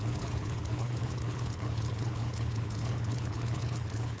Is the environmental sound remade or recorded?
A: remade